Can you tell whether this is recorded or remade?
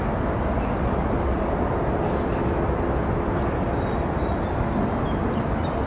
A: recorded